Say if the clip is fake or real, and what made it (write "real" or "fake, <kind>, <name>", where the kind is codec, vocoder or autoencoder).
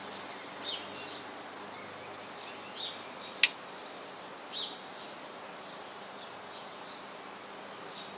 real